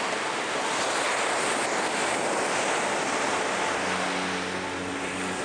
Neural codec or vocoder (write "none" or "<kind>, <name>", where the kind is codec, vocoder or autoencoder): none